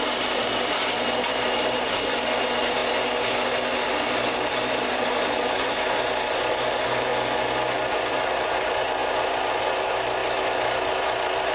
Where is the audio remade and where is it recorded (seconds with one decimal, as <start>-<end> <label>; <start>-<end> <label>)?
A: 0.0-2.8 remade; 2.8-3.9 recorded; 3.9-7.1 remade; 7.1-8.1 recorded; 8.1-11.5 remade